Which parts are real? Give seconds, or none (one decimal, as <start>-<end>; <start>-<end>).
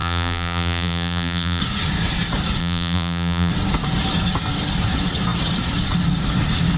1.6-2.6; 3.5-6.8